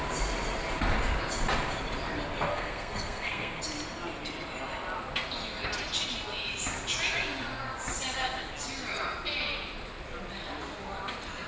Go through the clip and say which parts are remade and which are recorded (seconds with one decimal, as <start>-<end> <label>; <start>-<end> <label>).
0.0-2.5 recorded; 2.5-3.6 remade; 3.6-11.5 recorded